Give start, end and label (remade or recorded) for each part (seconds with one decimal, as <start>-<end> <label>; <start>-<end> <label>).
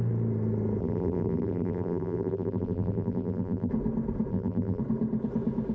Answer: 0.0-0.8 recorded; 0.8-3.7 remade; 3.7-4.3 recorded; 4.3-4.8 remade; 4.8-5.7 recorded